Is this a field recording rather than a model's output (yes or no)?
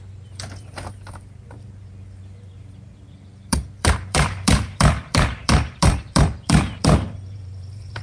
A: no